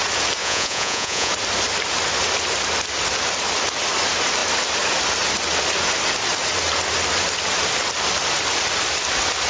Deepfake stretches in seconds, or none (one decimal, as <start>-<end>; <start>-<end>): 0.4-1.3

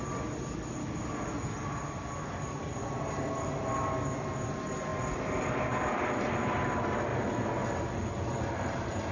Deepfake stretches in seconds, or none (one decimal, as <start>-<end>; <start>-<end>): none